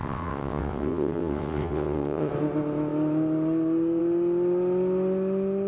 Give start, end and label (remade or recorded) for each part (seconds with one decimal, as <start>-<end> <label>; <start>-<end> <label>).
0.0-2.3 remade; 2.3-5.7 recorded